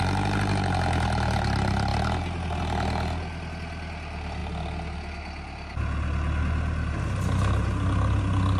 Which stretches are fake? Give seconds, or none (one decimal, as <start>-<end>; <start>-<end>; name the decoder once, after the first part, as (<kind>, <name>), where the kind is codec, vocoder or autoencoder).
none

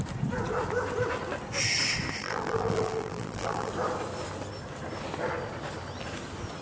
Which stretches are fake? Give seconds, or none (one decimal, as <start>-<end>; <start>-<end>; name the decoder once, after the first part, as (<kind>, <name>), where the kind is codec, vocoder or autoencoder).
2.2-3.7 (vocoder, BigVGAN v2)

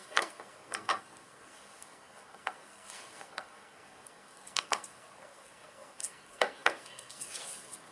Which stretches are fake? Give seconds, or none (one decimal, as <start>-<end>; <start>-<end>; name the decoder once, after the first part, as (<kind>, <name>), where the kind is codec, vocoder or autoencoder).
0.0-7.9 (codec, SNAC)

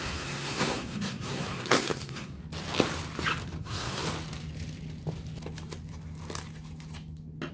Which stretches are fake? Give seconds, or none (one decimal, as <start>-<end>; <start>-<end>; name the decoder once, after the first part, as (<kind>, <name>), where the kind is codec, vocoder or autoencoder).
0.0-2.4 (codec, SNAC); 3.6-4.0

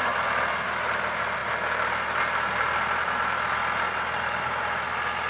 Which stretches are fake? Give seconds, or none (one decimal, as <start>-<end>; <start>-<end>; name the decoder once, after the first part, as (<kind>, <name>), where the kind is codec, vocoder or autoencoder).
none

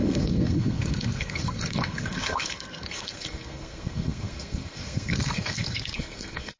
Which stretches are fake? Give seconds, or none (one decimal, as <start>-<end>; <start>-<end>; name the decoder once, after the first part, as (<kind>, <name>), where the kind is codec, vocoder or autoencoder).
0.0-6.6 (codec, SNAC)